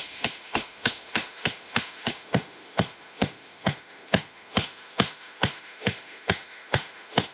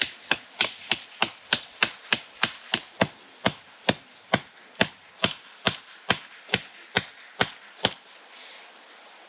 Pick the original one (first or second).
second